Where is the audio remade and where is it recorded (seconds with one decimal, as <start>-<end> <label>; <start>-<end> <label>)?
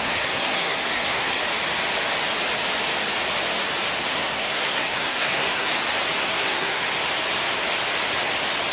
0.0-1.4 remade; 1.4-4.1 recorded; 4.1-5.7 remade; 5.7-6.2 recorded; 6.2-6.8 remade; 6.8-8.7 recorded